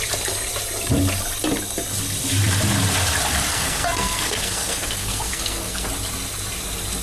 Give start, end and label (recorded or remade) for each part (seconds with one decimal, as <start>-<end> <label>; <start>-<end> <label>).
0.0-3.5 recorded; 3.5-5.9 remade; 5.9-7.0 recorded